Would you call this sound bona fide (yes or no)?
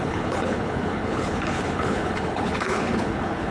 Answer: no